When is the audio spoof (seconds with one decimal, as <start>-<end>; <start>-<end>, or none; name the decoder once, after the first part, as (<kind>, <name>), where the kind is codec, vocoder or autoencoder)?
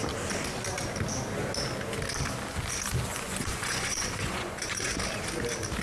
3.1-5.0 (vocoder, Vocos)